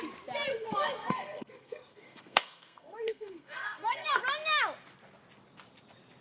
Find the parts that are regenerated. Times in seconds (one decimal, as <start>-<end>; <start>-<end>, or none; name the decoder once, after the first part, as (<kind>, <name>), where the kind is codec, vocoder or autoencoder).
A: 0.5-4.2 (codec, SNAC)